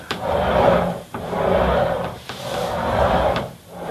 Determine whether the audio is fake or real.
fake